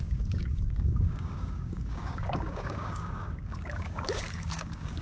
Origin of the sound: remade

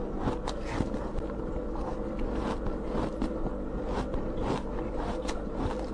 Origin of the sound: recorded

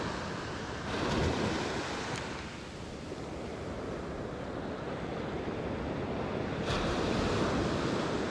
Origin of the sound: recorded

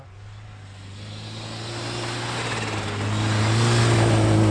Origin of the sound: recorded